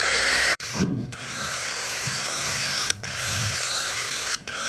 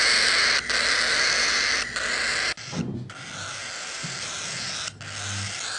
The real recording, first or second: second